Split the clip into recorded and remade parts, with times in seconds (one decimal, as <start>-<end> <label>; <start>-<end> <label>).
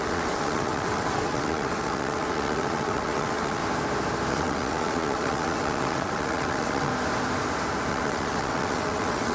0.0-3.6 remade; 3.6-4.3 recorded; 4.3-6.9 remade; 6.9-7.9 recorded; 7.9-9.3 remade